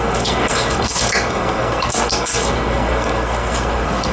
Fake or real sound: fake